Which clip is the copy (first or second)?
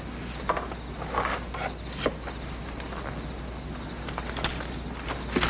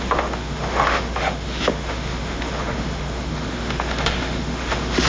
second